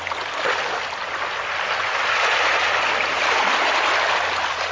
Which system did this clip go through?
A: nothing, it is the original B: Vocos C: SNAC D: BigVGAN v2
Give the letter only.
A